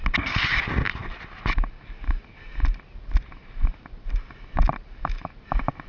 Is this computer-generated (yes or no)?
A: no